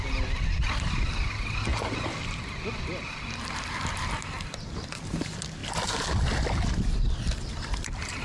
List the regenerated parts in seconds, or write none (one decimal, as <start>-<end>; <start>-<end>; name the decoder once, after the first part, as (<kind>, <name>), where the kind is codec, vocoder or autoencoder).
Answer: none